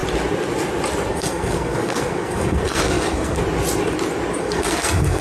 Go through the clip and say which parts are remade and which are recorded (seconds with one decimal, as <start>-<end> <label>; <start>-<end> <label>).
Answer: 0.0-1.1 recorded; 1.1-3.4 remade; 3.4-4.4 recorded; 4.4-5.2 remade